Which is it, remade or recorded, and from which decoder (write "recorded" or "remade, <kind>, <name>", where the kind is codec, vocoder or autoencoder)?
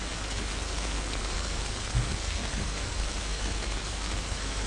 remade, codec, SNAC